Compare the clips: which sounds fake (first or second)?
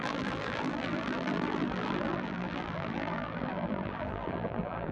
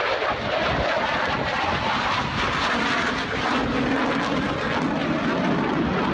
first